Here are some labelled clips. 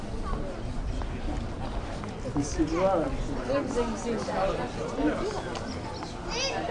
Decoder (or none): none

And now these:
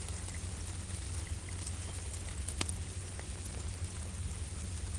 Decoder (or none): none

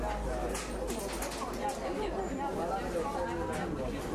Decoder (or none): none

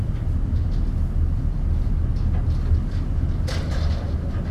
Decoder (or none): none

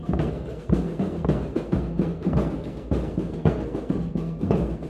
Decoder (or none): codec, SNAC